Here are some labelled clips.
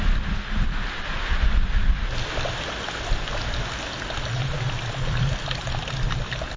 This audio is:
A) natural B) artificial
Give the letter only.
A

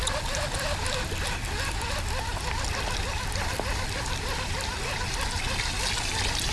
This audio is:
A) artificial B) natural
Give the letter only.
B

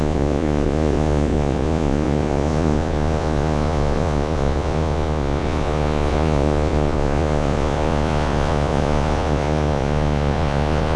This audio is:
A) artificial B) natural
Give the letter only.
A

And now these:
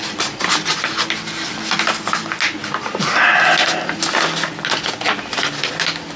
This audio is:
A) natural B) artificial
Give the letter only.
A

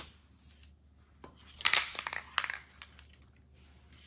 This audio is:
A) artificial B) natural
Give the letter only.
B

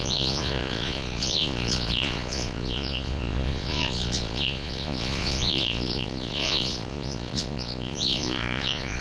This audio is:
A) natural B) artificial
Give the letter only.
B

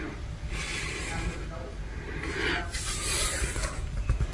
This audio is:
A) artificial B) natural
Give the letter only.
B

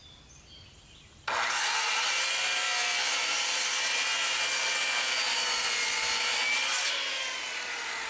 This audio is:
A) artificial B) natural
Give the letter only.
B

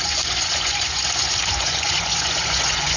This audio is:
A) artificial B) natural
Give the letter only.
A